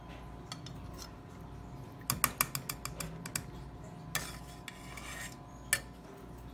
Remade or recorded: recorded